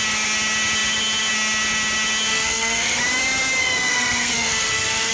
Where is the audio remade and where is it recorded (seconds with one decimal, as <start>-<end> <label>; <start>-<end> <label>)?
0.0-2.3 recorded; 2.3-3.0 remade; 3.0-3.6 recorded; 3.6-5.1 remade